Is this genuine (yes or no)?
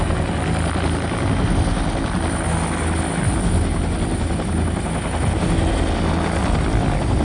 yes